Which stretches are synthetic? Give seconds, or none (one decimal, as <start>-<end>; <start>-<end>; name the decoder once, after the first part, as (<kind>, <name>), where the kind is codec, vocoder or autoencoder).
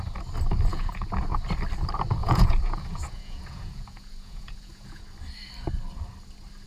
0.7-1.4 (vocoder, Vocos); 2.2-5.0